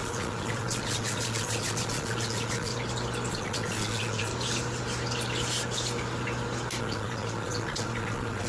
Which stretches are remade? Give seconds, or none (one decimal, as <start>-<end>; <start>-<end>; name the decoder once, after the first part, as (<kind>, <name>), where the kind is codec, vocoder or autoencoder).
0.0-2.7 (vocoder, Vocos); 3.3-4.3; 6.8-8.5